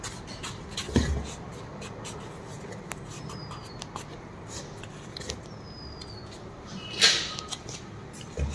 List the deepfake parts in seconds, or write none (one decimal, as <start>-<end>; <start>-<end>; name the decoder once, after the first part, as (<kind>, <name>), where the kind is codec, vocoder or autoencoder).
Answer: none